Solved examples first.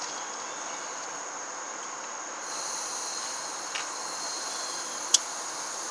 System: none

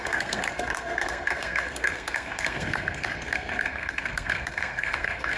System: codec, SNAC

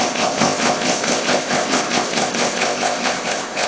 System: codec, ZipCodec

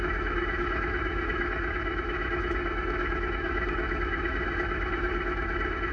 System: autoencoder, DAC-VAE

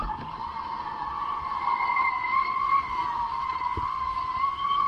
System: none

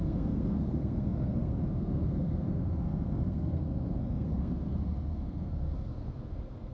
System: codec, SNAC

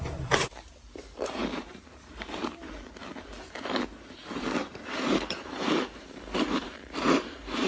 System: vocoder, BigVGAN v2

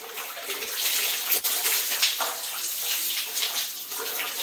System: none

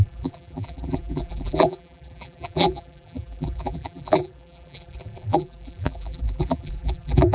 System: vocoder, BigVGAN v2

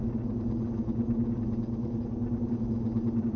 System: none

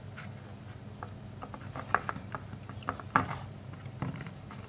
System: none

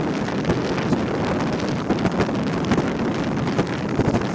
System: none